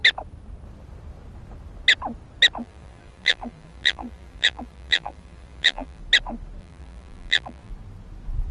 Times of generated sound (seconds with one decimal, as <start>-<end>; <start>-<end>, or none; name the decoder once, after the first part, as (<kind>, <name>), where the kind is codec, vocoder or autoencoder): 2.6-6.0 (vocoder, BigVGAN v2); 6.6-7.7